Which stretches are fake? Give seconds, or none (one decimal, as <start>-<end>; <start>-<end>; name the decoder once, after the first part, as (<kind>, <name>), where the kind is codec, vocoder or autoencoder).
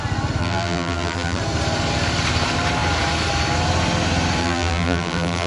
0.4-1.4 (vocoder, BigVGAN v2); 4.4-5.5